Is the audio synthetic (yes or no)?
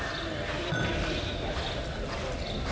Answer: no